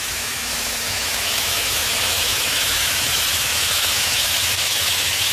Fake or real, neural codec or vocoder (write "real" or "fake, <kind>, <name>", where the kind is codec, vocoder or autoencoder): fake, autoencoder, DAC-VAE